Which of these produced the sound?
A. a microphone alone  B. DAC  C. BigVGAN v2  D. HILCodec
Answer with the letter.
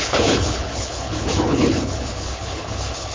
D